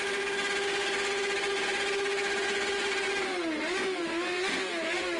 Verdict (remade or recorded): recorded